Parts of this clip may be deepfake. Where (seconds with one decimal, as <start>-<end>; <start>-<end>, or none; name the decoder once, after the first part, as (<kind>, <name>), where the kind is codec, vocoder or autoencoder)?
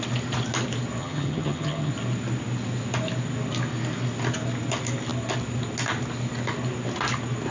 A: 1.0-1.9 (vocoder, HiFi-GAN)